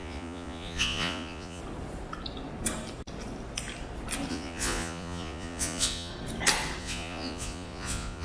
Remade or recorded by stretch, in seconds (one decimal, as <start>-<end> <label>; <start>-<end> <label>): 0.0-1.6 remade; 1.6-4.3 recorded; 4.3-6.1 remade; 6.1-6.8 recorded; 6.8-8.2 remade